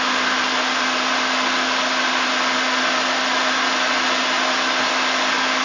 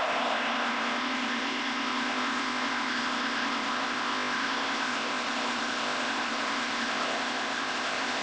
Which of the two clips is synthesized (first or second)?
second